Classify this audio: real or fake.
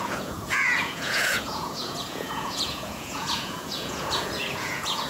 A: fake